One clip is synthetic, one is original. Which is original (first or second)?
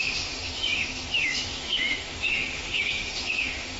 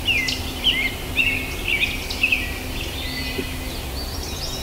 second